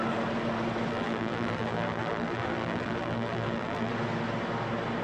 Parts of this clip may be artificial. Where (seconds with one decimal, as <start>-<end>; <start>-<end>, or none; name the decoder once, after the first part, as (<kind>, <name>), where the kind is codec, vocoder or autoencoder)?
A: 0.9-3.9 (vocoder, BigVGAN v2)